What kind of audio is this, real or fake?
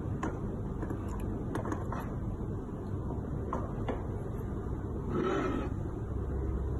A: real